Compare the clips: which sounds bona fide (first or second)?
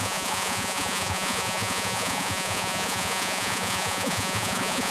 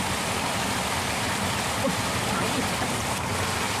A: second